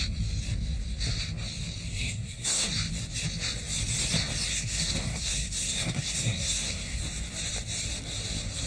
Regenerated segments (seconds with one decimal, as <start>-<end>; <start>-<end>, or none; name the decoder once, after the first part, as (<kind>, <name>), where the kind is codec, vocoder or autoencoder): 1.9-2.7 (codec, SNAC); 4.5-7.0